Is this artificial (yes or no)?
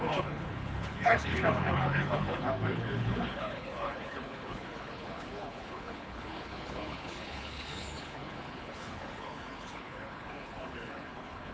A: yes